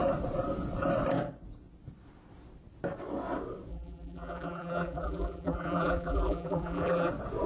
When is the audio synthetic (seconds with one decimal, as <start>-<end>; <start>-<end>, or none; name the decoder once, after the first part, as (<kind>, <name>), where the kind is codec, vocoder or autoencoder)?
3.7-7.1 (vocoder, BigVGAN v2)